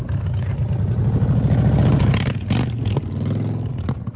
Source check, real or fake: real